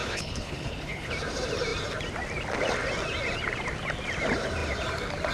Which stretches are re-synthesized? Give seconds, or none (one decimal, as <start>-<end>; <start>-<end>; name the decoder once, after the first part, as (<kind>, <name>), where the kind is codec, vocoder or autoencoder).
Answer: 0.0-1.1 (codec, HILCodec)